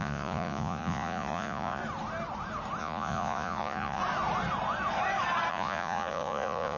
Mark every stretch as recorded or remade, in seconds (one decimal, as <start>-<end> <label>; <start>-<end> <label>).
0.0-1.8 remade; 1.8-2.8 recorded; 2.8-4.0 remade; 4.0-5.5 recorded; 5.5-6.8 remade